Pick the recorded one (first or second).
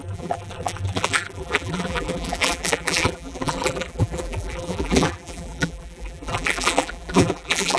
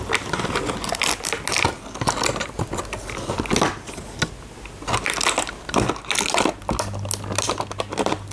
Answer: second